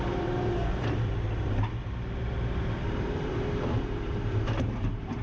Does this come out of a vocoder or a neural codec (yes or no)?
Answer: yes